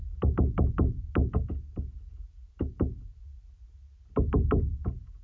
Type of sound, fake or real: real